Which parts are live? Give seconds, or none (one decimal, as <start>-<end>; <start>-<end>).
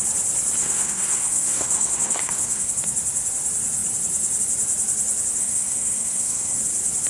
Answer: 0.0-0.6; 2.7-5.4; 6.6-7.1